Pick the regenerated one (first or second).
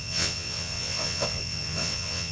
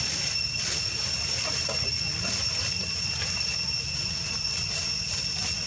first